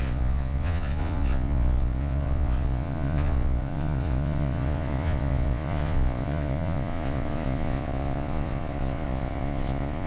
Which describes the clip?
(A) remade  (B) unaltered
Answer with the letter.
A